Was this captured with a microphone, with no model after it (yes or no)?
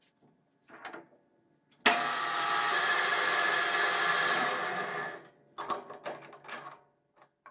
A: yes